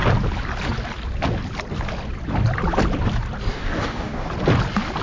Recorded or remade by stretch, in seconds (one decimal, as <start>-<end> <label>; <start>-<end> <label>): 0.0-3.5 recorded; 3.5-4.3 remade; 4.3-5.0 recorded